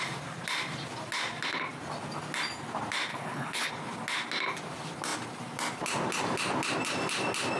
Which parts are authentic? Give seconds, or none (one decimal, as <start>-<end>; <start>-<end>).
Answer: 0.0-3.1; 3.7-7.6